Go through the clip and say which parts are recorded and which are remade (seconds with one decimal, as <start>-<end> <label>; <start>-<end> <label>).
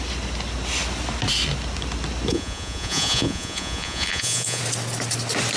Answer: 0.0-2.3 recorded; 2.3-4.6 remade; 4.6-5.6 recorded